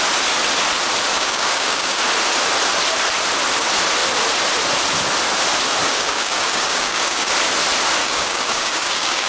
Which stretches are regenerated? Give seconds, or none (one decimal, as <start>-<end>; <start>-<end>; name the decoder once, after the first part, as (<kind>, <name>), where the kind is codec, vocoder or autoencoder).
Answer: 1.1-2.0 (codec, DAC); 5.9-7.3; 8.0-9.3